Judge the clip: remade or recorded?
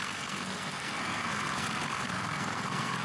remade